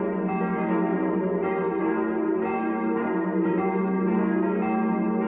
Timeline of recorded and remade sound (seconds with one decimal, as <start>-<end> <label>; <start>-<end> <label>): 0.0-0.9 recorded; 0.9-1.8 remade; 1.8-2.5 recorded; 2.5-3.8 remade; 3.8-5.3 recorded